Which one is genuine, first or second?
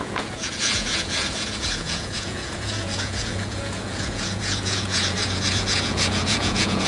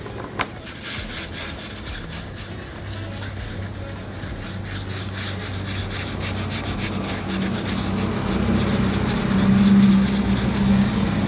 second